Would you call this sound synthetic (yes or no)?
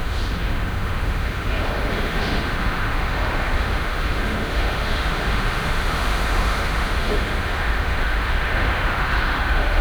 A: yes